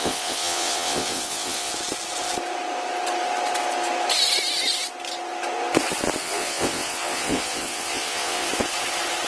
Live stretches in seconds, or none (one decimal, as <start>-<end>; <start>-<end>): 1.7-6.2; 8.5-9.3